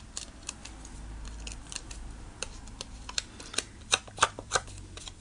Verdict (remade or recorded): remade